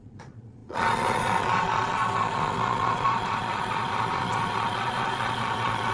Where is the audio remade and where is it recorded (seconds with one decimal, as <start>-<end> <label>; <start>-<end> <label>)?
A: 0.0-5.9 remade